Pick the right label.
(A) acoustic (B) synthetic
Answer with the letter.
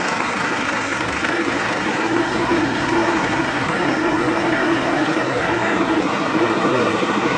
B